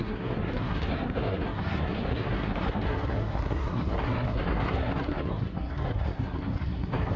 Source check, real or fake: fake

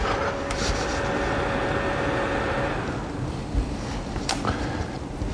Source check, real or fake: fake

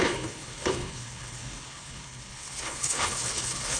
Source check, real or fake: fake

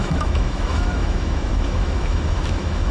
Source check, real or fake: fake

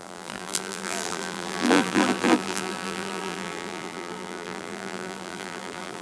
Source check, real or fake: fake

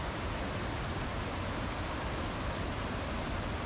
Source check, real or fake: real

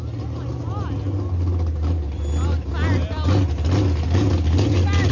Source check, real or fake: real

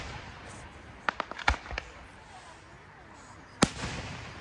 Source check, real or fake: fake